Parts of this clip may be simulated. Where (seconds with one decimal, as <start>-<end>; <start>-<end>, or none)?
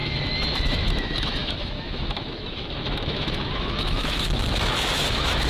0.0-5.5